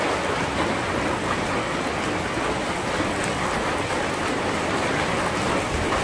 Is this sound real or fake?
real